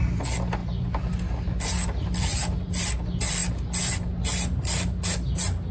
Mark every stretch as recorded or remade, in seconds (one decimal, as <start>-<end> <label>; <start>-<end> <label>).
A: 0.0-5.7 recorded